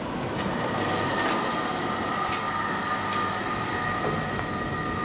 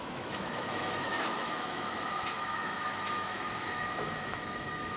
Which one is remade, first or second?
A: second